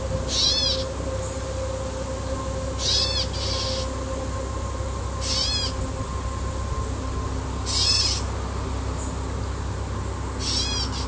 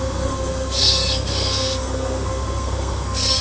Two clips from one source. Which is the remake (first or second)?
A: second